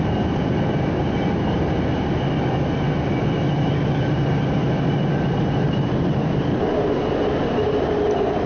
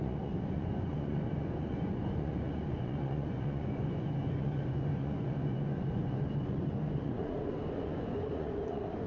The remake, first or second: second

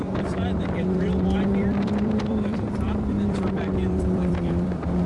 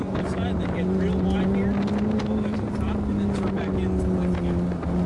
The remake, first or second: first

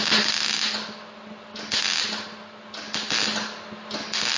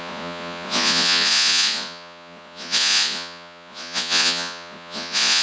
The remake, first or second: second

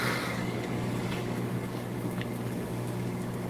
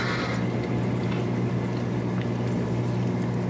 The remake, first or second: first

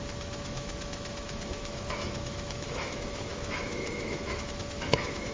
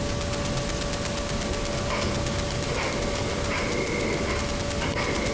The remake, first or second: first